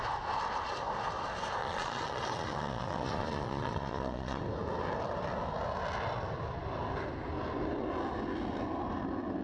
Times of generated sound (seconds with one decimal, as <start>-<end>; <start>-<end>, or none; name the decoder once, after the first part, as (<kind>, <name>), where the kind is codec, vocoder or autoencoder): 1.6-4.4 (vocoder, Vocos)